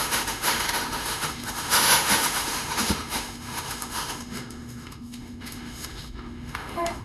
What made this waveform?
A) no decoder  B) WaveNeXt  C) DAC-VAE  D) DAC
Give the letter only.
C